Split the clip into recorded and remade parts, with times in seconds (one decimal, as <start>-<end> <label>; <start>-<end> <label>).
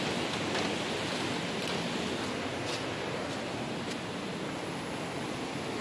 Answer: 0.0-5.8 recorded